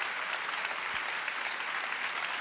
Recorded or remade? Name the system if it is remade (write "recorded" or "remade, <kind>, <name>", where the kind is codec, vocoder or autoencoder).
recorded